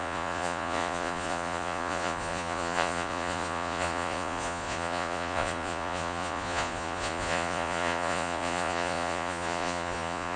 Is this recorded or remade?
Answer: remade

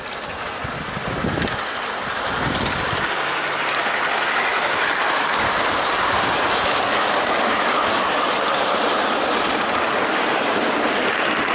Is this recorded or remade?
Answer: recorded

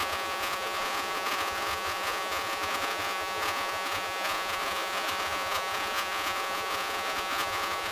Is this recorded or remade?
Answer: remade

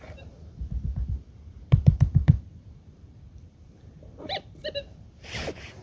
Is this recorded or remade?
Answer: remade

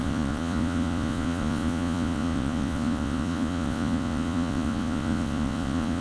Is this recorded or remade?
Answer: remade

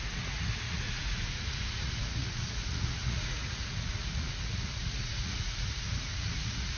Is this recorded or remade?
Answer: remade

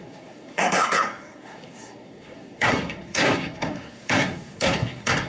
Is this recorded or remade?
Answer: remade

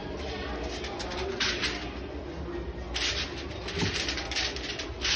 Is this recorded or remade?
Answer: recorded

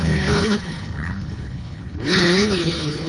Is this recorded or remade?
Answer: remade